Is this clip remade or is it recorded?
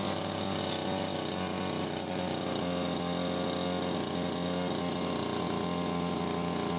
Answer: recorded